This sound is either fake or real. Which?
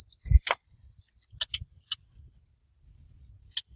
real